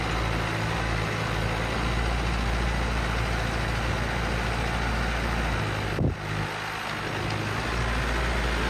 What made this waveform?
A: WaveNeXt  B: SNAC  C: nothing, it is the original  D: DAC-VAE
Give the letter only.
C